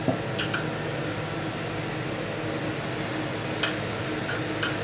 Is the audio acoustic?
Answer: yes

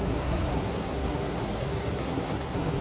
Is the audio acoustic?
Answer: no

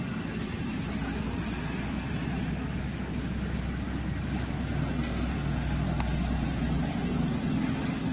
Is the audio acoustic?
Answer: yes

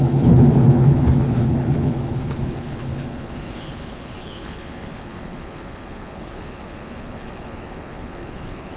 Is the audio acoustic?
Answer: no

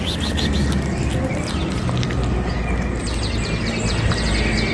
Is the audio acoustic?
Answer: yes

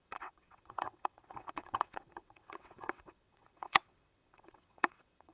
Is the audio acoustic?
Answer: no